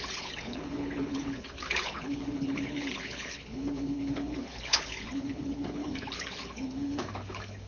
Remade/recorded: remade